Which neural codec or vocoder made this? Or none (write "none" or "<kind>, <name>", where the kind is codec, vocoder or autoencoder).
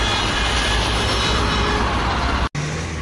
none